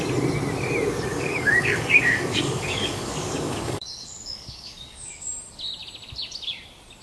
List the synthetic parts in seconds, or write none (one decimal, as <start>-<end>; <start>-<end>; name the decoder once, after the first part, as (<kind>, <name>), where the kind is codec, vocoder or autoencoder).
1.1-5.3 (codec, DAC)